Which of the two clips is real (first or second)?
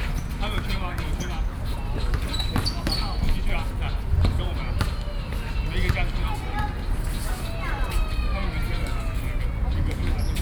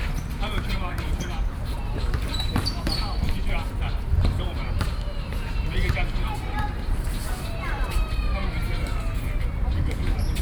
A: first